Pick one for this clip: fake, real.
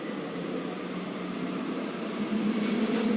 real